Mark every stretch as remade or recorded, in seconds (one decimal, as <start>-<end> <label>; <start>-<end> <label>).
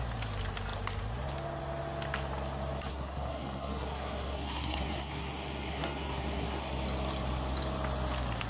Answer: 0.0-2.9 recorded; 2.9-6.6 remade; 6.6-8.5 recorded